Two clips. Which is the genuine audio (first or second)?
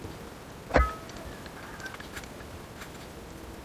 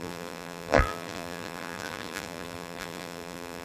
first